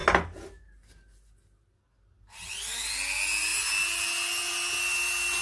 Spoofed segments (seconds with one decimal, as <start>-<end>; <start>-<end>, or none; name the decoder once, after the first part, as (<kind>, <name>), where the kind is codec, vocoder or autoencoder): none